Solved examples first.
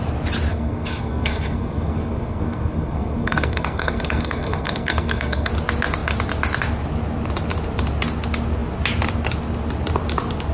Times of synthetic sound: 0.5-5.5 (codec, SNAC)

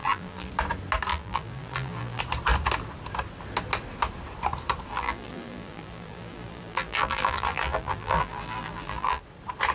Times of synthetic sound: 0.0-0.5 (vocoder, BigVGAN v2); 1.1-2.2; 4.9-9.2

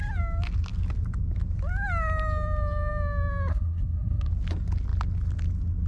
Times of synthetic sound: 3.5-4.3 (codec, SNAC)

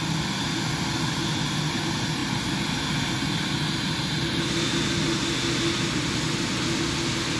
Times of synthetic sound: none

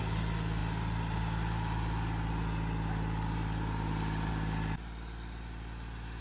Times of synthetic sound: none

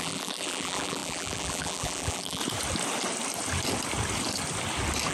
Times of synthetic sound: 0.0-2.4 (vocoder, BigVGAN v2)